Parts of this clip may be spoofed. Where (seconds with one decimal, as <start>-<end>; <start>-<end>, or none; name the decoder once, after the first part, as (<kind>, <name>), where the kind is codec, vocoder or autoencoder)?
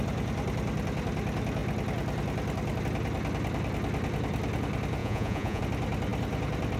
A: 5.0-5.6 (vocoder, Vocos)